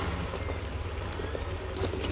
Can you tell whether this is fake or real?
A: real